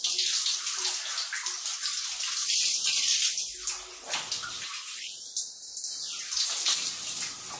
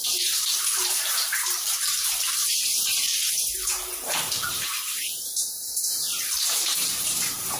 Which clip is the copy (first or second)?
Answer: second